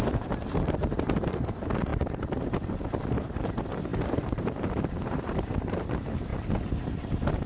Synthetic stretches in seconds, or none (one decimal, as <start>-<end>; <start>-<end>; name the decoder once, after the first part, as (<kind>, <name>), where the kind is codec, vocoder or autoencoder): 0.0-6.3 (vocoder, BigVGAN v2); 6.9-7.5